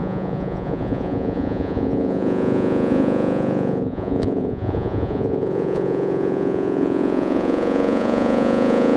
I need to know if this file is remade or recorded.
remade